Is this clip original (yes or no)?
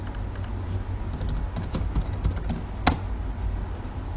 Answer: yes